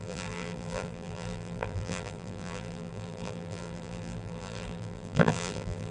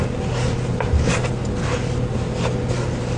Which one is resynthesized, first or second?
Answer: first